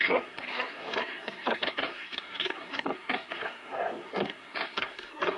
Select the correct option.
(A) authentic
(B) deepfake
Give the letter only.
B